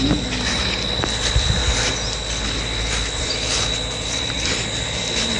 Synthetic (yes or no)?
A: no